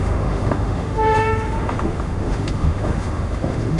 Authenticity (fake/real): fake